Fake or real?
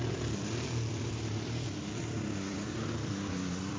fake